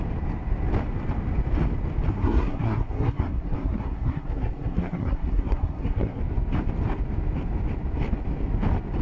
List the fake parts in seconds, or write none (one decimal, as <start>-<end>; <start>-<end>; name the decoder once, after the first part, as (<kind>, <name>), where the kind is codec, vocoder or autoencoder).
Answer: 2.1-6.2 (codec, SNAC)